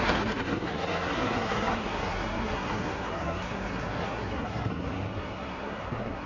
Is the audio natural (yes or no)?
no